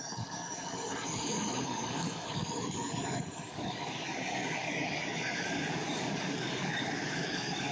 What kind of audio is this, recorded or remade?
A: remade